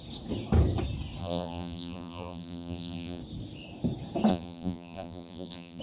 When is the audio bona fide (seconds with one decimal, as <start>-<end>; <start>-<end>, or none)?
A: 0.0-1.2; 3.2-4.3